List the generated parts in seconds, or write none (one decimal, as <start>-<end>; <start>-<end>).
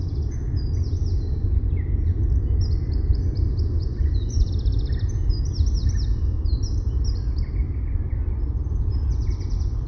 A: 3.8-4.5